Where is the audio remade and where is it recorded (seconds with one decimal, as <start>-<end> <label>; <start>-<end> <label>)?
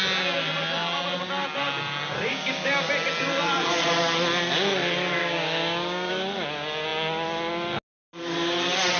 0.0-2.3 recorded; 2.3-2.9 remade; 2.9-5.2 recorded; 5.2-6.1 remade; 6.1-9.0 recorded